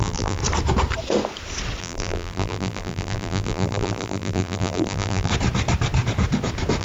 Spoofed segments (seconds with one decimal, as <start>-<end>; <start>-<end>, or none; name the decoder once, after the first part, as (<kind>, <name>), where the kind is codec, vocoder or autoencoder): 0.0-0.4 (vocoder, BigVGAN v2); 1.8-5.3